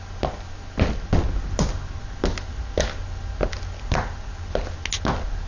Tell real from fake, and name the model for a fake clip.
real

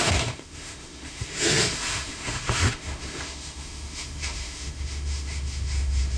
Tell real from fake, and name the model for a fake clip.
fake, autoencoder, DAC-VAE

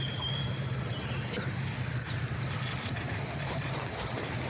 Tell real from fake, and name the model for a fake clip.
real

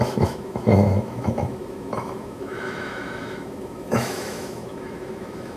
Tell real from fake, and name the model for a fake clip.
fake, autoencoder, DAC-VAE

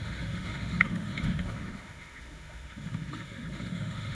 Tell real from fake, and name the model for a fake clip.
fake, autoencoder, DAC-VAE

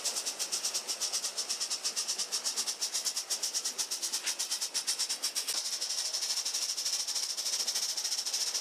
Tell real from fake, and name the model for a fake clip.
real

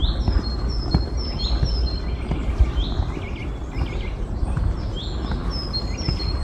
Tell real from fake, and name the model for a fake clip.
real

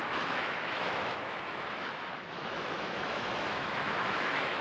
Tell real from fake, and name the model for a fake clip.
fake, autoencoder, DAC-VAE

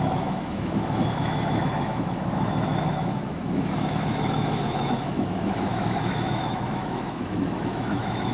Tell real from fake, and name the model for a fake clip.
fake, autoencoder, DAC-VAE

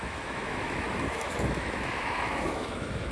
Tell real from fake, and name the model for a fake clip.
fake, autoencoder, DAC-VAE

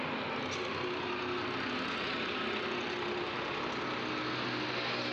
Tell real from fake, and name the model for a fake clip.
real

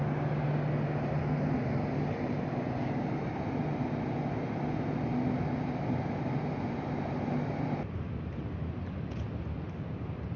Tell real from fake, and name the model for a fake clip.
real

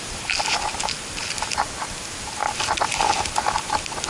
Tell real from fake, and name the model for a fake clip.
real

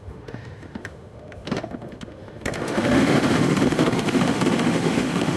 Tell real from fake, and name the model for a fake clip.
fake, autoencoder, DAC-VAE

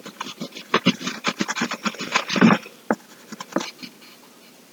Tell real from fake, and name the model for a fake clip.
real